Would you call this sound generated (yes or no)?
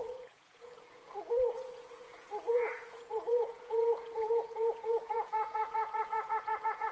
yes